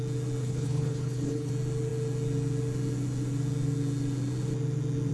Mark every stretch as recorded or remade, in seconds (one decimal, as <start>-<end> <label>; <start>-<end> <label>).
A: 0.0-0.4 recorded; 0.4-1.5 remade; 1.5-5.1 recorded